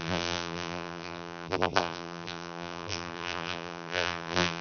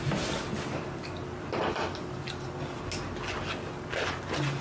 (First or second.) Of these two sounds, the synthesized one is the first